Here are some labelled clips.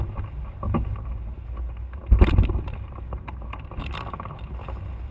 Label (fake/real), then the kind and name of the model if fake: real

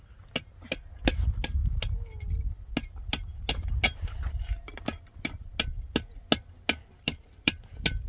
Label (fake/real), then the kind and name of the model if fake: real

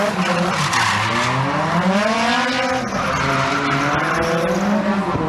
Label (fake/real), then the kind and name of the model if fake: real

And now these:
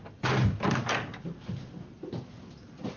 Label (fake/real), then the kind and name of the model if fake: real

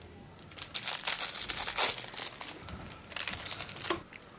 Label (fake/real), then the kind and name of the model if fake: real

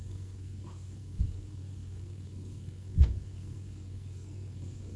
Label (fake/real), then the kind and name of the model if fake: fake, codec, SNAC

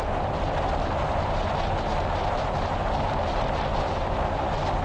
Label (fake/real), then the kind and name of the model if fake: real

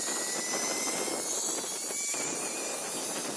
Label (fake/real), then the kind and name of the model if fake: real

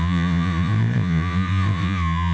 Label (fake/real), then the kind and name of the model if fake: fake, vocoder, Vocos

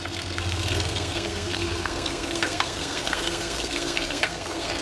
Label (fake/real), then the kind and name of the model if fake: fake, codec, SNAC